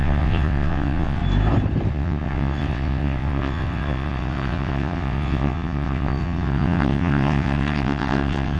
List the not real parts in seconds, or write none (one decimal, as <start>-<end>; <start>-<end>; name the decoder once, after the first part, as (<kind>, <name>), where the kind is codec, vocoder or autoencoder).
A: 0.0-1.2 (vocoder, WaveNeXt); 1.9-8.6